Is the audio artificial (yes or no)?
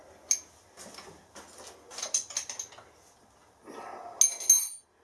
no